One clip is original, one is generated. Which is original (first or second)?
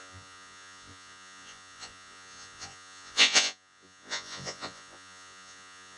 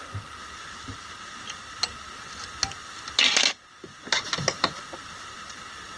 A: second